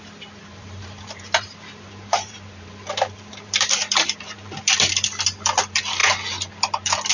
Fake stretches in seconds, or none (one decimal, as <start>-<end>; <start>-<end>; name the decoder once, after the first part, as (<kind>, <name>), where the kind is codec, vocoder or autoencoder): 0.4-4.7 (vocoder, BigVGAN v2)